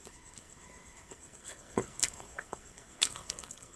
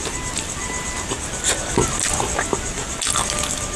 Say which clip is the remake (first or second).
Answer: first